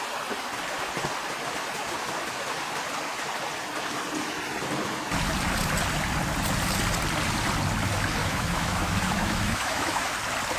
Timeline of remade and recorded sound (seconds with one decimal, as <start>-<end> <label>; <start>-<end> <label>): 0.0-8.2 recorded; 8.2-10.1 remade; 10.1-10.6 recorded